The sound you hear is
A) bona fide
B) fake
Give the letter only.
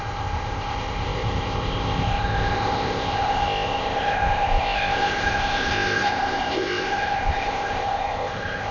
B